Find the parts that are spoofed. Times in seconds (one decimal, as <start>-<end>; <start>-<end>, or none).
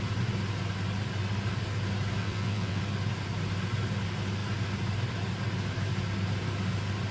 2.2-2.8